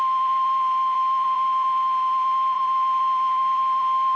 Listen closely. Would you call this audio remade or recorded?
remade